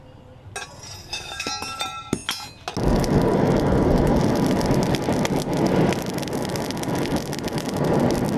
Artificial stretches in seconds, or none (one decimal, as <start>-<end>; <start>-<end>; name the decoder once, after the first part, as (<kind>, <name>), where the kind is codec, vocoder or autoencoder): 1.0-1.5 (codec, DAC)

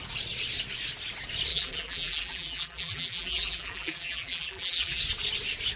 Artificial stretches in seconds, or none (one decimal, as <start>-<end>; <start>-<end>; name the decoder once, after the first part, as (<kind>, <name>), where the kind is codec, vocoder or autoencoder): 1.5-5.0 (vocoder, BigVGAN v2)

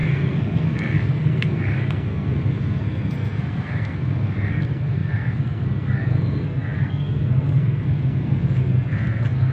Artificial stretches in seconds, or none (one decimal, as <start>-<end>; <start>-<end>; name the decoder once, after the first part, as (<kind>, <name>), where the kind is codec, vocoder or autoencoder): 0.0-9.5 (codec, SNAC)

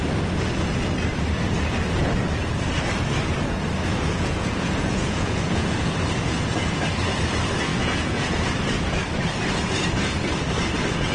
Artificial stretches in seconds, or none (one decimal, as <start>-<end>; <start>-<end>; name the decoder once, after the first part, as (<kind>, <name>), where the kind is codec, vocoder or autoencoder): 3.9-5.9 (vocoder, Vocos); 7.7-8.5

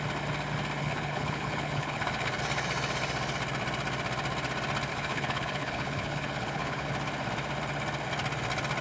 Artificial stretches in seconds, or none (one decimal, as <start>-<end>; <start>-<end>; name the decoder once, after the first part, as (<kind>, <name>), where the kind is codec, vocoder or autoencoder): 0.8-2.4 (codec, HILCodec); 4.9-6.9

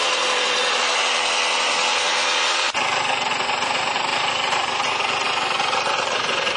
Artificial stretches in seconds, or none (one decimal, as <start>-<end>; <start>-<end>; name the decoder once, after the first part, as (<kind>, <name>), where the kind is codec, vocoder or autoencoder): none

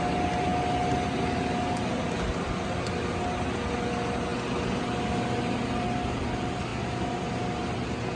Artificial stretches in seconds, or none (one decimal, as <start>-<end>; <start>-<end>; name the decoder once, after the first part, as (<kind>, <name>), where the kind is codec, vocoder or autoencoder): none